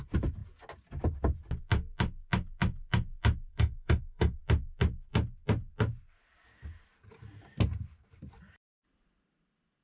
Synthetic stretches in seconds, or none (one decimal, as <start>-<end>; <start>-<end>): 3.5-4.4